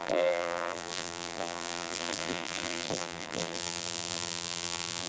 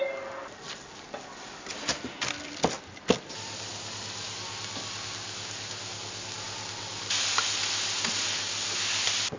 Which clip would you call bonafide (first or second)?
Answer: second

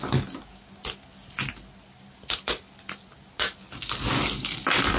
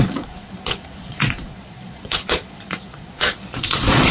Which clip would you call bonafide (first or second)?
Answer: first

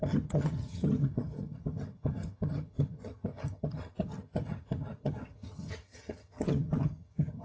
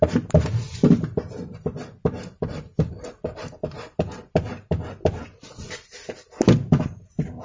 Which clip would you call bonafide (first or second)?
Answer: second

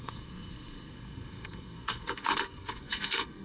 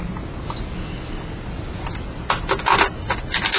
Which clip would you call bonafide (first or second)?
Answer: second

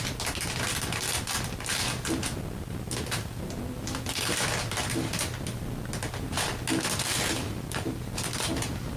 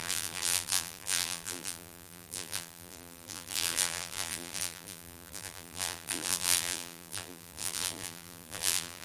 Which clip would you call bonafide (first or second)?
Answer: first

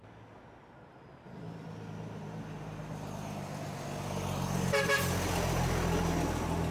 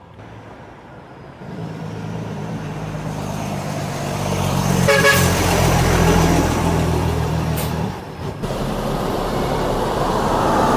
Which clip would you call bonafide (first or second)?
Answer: first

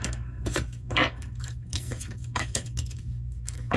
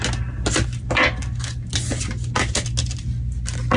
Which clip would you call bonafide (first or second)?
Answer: second